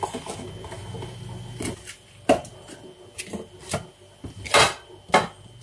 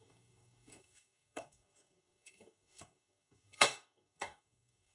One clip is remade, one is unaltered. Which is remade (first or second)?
second